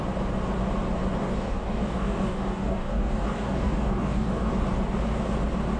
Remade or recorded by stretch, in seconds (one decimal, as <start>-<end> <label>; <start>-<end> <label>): 0.0-1.2 recorded; 1.2-4.5 remade; 4.5-5.8 recorded